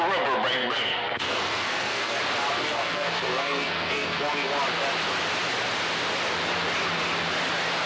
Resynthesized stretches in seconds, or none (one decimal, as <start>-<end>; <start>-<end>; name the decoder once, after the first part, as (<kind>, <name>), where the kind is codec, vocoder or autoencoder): 0.6-2.2 (codec, SNAC); 2.6-4.5